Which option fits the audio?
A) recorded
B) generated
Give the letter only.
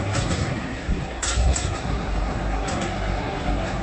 B